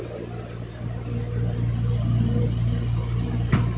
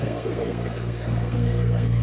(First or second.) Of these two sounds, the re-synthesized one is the second